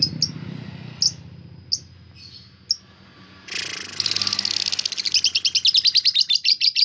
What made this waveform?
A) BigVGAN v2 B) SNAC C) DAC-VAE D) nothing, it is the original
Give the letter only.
D